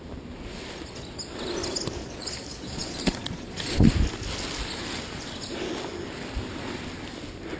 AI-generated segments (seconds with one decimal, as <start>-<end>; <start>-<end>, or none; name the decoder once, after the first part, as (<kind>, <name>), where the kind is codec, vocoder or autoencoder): 2.0-3.9 (vocoder, Vocos)